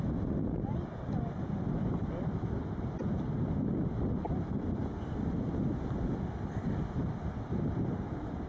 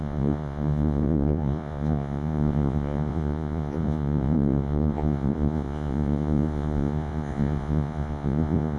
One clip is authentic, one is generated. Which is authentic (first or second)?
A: first